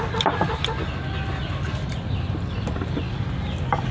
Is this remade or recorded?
recorded